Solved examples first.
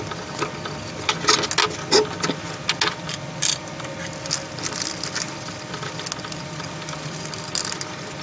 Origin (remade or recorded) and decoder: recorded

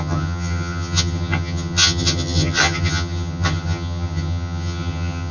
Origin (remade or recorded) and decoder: remade, vocoder, HiFi-GAN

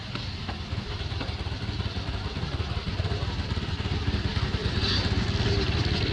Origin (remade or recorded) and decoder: remade, vocoder, BigVGAN v2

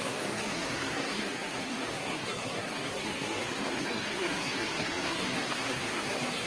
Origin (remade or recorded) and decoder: remade, codec, SNAC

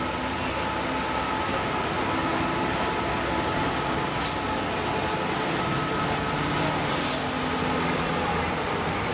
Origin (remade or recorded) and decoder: recorded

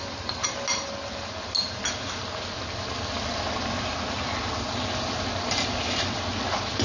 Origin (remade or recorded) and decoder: recorded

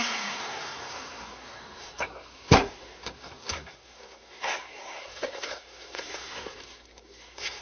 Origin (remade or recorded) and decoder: remade, codec, SNAC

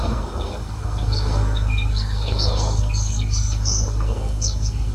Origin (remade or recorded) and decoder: remade, codec, SNAC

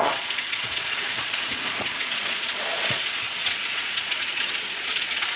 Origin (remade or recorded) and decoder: remade, vocoder, Vocos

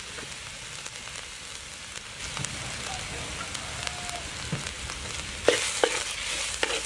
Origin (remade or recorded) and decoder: recorded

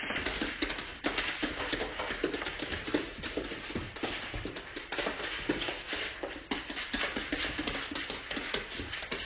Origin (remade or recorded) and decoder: recorded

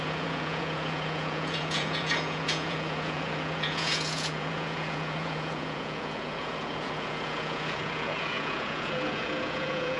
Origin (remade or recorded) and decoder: remade, vocoder, Vocos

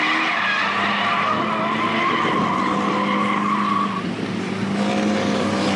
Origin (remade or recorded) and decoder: recorded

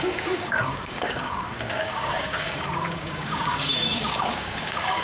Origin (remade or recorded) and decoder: remade, codec, DAC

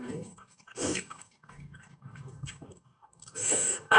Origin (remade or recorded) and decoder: remade, codec, DAC